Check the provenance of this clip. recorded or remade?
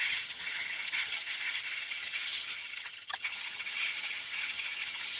remade